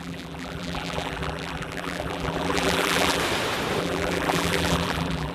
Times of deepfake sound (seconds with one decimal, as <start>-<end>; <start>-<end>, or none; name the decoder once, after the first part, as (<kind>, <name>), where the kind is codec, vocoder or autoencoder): 0.0-3.2 (vocoder, BigVGAN v2); 3.8-5.3